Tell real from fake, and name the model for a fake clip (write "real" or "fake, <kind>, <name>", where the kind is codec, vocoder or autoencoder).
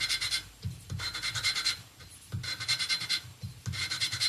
real